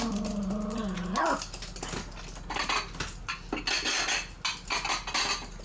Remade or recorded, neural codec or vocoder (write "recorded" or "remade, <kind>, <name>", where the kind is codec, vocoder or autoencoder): recorded